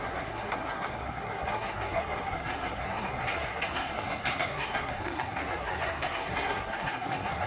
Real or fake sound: fake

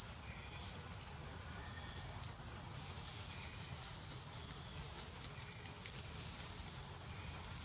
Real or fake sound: real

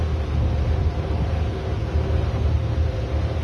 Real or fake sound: real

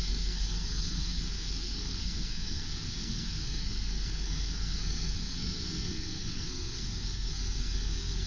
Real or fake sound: fake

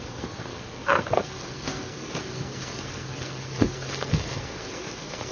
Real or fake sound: fake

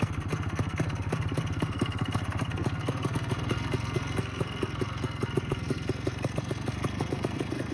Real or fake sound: fake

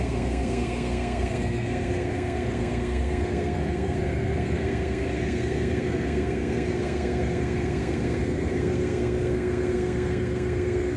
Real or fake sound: fake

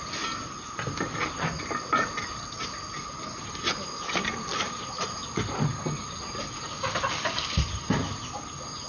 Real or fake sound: real